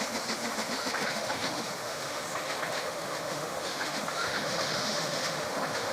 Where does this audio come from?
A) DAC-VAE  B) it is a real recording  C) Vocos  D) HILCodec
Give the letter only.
A